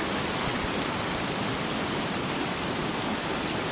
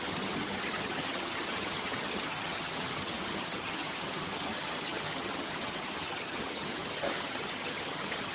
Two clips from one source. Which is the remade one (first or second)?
second